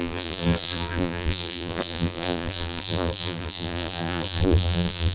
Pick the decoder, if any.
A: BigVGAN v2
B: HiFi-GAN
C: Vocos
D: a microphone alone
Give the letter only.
A